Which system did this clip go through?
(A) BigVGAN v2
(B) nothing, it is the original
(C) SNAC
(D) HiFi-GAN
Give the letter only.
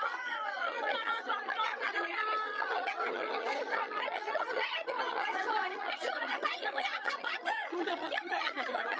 D